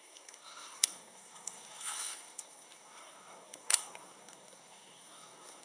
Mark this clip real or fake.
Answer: fake